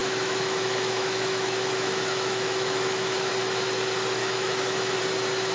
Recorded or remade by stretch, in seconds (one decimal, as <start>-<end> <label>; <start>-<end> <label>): 0.0-3.3 remade; 3.3-4.2 recorded; 4.2-5.0 remade; 5.0-5.5 recorded